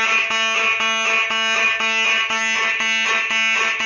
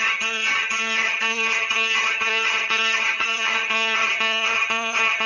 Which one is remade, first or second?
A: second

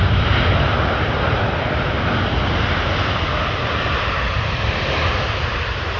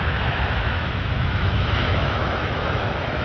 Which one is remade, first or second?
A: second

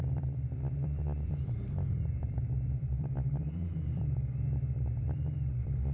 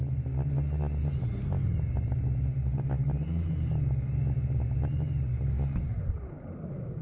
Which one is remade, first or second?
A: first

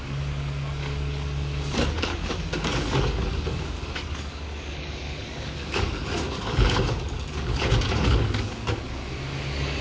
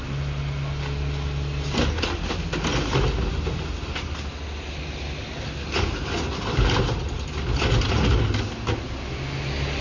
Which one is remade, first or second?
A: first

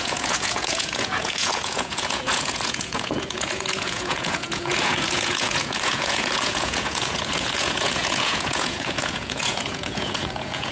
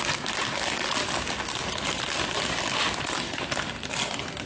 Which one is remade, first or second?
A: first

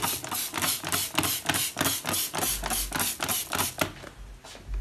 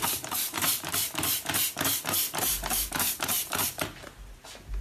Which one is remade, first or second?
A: second